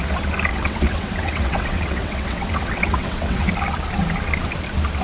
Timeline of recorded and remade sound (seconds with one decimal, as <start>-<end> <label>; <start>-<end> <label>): 0.0-0.5 recorded; 0.5-3.5 remade; 3.5-5.0 recorded